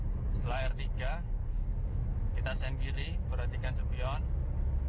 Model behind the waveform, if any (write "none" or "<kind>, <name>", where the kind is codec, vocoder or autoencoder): none